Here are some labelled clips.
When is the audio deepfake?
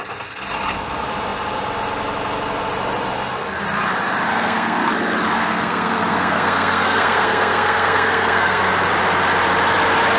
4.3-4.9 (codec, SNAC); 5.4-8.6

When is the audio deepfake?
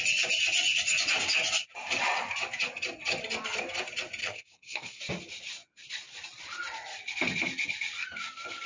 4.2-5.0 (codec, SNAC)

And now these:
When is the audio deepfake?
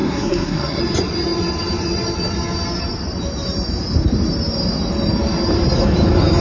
0.0-0.8 (codec, SNAC)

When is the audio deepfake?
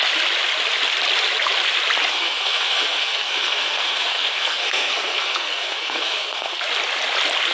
2.1-6.6 (codec, SNAC)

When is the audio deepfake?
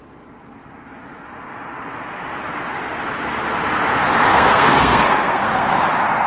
4.3-5.8 (codec, SNAC)